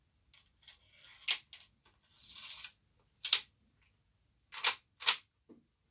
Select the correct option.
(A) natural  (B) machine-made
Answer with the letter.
A